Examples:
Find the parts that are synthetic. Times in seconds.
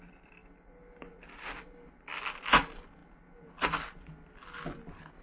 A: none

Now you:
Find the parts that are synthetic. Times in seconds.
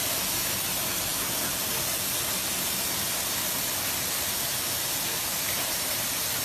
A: 5.3-6.0 (vocoder, BigVGAN v2)